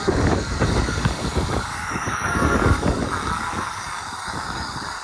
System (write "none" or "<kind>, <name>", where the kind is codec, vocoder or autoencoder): codec, DAC